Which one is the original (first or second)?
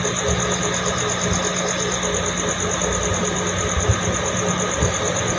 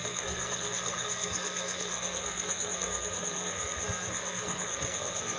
first